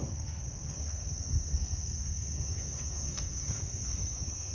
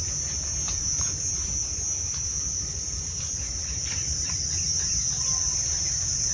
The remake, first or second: first